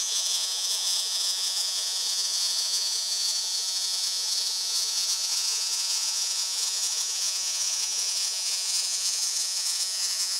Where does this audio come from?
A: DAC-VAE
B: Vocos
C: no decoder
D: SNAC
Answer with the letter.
B